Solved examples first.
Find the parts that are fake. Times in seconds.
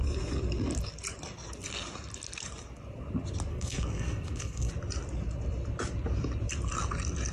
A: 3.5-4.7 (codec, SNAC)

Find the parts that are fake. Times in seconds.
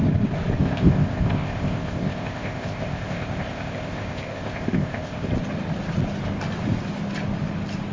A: 0.6-5.3 (codec, ZipCodec)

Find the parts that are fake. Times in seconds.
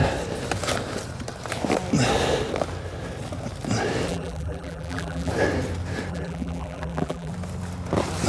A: 4.1-5.3 (vocoder, BigVGAN v2); 6.1-7.3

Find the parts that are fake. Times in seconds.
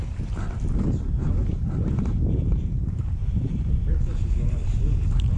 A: 1.4-4.4 (vocoder, BigVGAN v2)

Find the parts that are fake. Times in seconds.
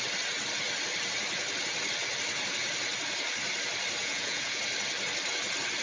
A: 4.0-4.6 (vocoder, Vocos)